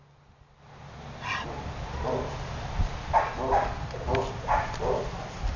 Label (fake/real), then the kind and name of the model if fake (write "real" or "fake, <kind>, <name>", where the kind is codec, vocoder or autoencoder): real